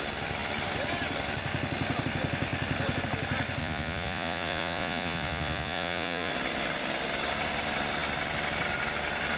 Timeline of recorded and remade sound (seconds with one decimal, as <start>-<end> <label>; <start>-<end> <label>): 0.0-3.6 recorded; 3.6-6.3 remade; 6.3-9.4 recorded